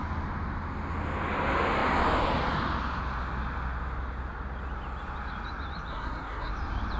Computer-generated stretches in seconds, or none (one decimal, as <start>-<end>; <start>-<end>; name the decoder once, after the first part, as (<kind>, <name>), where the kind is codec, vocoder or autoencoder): 5.9-6.5 (codec, SNAC)